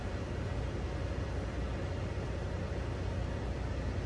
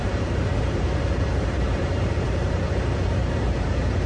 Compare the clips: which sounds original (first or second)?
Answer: first